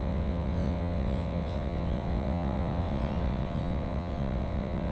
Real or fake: fake